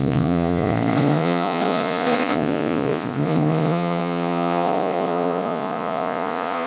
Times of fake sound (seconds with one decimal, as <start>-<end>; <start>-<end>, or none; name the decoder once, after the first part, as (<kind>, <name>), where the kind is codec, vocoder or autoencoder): 0.0-6.7 (vocoder, Vocos)

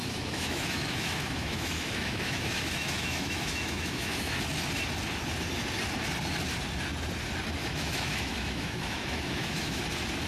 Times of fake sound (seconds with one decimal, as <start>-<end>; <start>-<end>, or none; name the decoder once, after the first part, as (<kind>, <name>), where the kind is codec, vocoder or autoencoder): 0.0-4.4 (autoencoder, DAC-VAE); 7.6-9.8

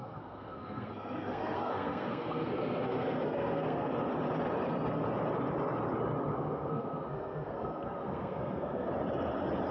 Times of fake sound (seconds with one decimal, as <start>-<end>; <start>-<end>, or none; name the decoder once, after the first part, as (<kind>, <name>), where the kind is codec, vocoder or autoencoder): 0.0-3.9 (codec, SNAC); 6.3-8.9

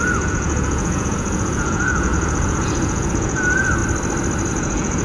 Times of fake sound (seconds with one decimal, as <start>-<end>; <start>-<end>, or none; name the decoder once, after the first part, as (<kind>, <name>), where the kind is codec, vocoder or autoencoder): 0.0-3.8 (vocoder, Vocos); 4.5-5.0

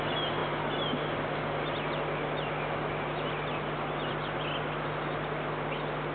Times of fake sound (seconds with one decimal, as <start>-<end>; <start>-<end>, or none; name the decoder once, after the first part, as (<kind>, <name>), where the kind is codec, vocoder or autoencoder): none

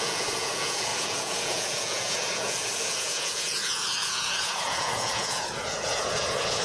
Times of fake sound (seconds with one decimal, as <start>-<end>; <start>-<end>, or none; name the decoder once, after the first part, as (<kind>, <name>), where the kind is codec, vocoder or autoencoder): 0.0-6.6 (vocoder, Vocos)

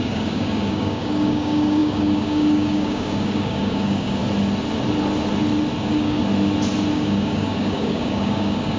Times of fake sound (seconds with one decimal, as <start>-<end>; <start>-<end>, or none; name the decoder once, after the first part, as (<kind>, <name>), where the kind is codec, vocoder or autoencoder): 0.0-4.2 (codec, DAC); 5.8-6.2; 6.9-8.8

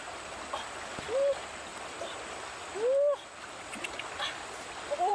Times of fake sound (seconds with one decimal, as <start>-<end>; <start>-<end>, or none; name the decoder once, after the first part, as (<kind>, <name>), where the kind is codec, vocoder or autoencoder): none